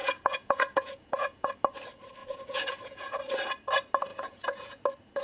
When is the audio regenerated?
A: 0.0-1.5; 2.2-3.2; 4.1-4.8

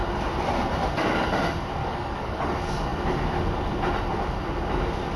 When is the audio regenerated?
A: 1.8-2.5